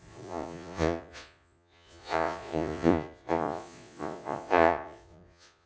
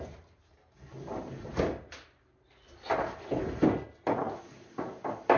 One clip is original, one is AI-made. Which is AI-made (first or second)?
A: first